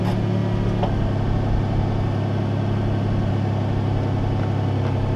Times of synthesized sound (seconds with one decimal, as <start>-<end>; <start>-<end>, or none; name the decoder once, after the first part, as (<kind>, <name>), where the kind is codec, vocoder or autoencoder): none

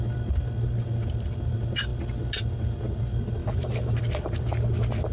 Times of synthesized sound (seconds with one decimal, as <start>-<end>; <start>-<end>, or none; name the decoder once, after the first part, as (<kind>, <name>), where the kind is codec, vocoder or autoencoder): 3.4-4.0 (vocoder, BigVGAN v2)

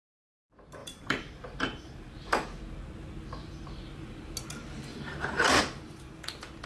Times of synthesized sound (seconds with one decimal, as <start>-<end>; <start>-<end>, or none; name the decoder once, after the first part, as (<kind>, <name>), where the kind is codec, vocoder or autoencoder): 0.8-2.6 (vocoder, BigVGAN v2); 4.9-5.6